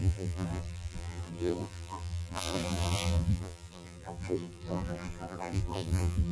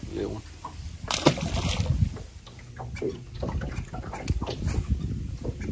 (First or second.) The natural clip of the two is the second